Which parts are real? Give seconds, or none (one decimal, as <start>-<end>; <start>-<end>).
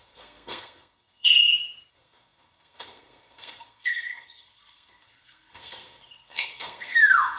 1.4-1.9